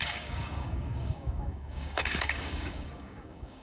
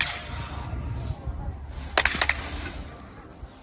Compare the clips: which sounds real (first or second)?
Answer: second